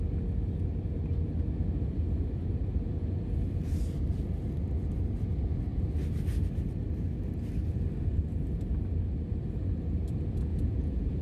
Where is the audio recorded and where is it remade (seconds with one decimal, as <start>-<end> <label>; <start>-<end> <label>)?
0.0-10.5 recorded; 10.5-11.2 remade